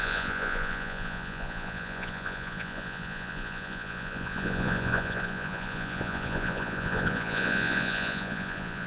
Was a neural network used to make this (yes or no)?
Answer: yes